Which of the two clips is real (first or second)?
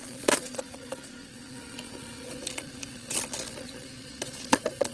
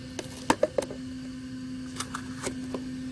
second